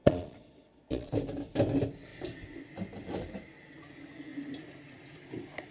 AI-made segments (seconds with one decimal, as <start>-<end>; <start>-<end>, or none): 0.0-1.1